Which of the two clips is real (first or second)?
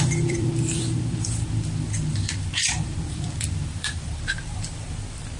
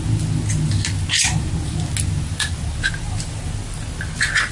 second